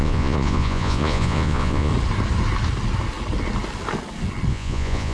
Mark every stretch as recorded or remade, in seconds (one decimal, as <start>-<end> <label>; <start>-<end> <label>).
0.0-1.9 remade; 1.9-4.5 recorded; 4.5-5.1 remade